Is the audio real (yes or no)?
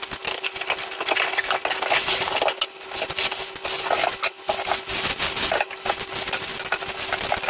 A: yes